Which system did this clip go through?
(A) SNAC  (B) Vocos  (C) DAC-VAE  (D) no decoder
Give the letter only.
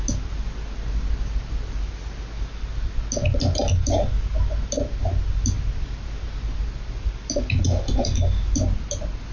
D